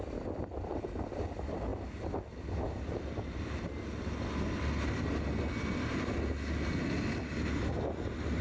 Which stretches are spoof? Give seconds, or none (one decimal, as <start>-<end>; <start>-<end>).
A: none